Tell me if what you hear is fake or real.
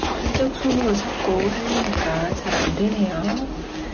real